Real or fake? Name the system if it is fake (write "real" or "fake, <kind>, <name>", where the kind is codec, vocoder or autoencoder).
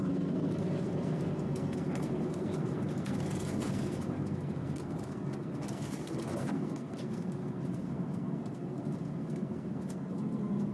fake, codec, SNAC